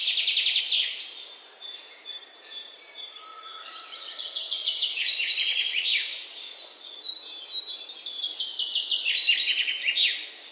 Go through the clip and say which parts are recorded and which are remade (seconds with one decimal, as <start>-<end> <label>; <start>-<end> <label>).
0.0-3.3 recorded; 3.3-7.0 remade; 7.0-10.5 recorded